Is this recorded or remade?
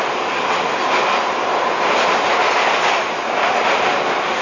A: recorded